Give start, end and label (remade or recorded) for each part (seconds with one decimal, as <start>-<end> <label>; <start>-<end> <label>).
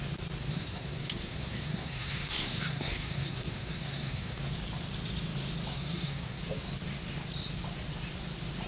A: 0.0-0.5 recorded; 0.5-4.4 remade; 4.4-5.7 recorded; 5.7-6.4 remade; 6.4-8.7 recorded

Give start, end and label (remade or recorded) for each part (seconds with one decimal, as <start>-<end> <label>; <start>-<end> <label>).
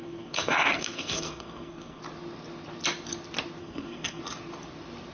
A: 0.0-2.0 remade; 2.0-3.6 recorded; 3.6-4.2 remade; 4.2-5.1 recorded